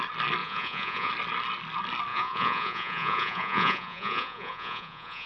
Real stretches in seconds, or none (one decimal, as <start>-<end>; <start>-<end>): 0.0-0.4; 1.1-2.1